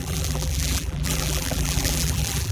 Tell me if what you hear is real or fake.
fake